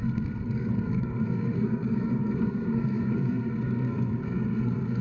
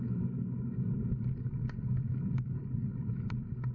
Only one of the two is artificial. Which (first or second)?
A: first